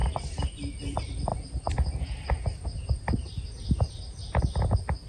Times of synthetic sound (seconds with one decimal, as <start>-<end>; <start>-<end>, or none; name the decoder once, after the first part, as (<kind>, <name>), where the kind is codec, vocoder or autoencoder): 1.3-4.4 (vocoder, Vocos)